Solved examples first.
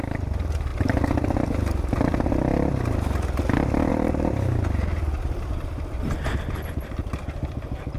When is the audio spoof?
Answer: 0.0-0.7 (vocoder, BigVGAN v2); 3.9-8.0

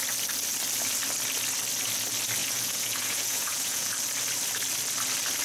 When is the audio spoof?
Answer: 2.4-3.9 (vocoder, Vocos)